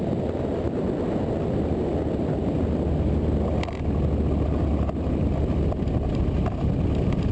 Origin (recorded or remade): recorded